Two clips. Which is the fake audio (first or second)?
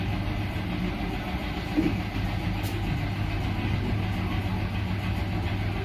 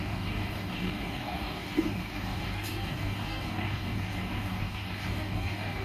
second